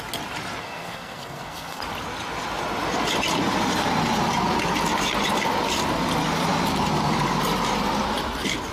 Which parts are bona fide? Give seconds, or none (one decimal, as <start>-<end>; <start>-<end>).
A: 0.0-0.6; 1.8-8.7